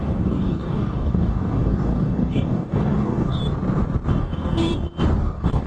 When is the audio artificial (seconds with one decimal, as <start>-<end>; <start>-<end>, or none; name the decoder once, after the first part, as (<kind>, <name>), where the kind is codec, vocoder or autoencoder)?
0.0-3.4 (codec, DAC); 4.2-4.7; 5.2-5.7